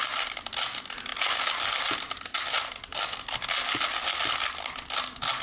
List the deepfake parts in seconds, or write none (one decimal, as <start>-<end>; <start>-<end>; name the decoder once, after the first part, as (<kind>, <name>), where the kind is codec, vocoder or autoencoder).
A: none